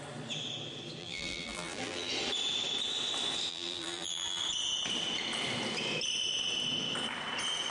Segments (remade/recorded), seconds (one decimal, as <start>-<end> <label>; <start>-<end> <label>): 0.0-1.0 recorded; 1.0-2.1 remade; 2.1-3.5 recorded; 3.5-4.4 remade; 4.4-7.7 recorded